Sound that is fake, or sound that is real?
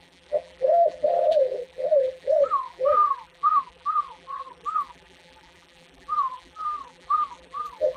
fake